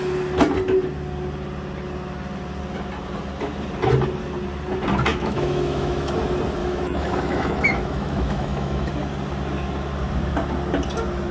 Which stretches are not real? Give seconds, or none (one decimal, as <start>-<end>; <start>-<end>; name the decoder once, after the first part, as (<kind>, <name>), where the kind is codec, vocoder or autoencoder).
5.1-6.1 (autoencoder, DAC-VAE); 6.6-8.9